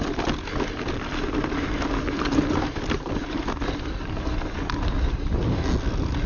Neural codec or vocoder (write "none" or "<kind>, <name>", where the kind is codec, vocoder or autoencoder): none